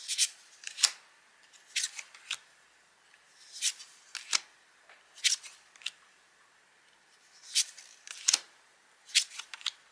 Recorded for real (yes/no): yes